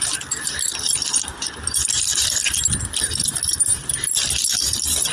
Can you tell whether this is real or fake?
fake